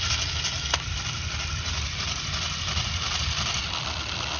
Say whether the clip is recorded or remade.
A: recorded